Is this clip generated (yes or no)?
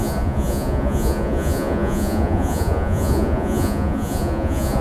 yes